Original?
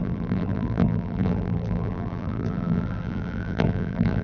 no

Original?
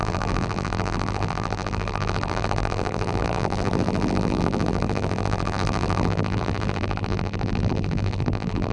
no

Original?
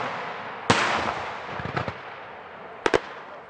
yes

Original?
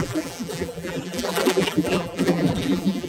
no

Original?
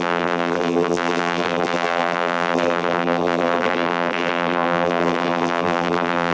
no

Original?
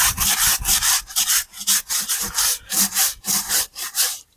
no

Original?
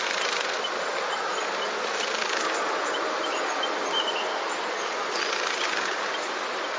yes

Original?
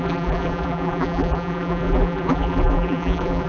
no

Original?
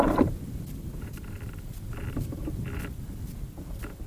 no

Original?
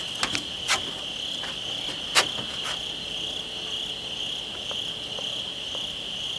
yes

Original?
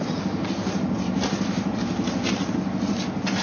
yes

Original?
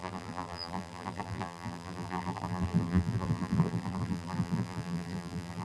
no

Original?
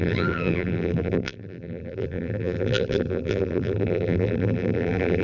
no